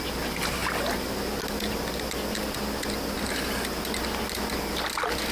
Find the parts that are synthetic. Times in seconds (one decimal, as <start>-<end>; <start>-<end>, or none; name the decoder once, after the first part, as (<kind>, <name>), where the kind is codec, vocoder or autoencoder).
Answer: none